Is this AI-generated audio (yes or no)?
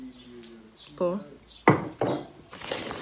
no